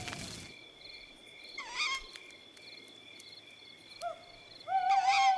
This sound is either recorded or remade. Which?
recorded